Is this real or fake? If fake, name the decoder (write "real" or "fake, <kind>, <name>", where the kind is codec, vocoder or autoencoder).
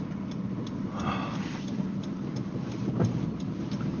real